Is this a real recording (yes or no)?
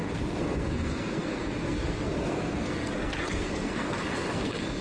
no